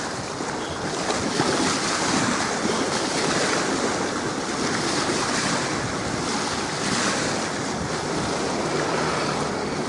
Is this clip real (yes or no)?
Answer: yes